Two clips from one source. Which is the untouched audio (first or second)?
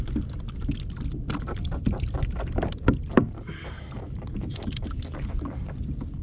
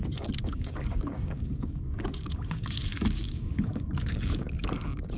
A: first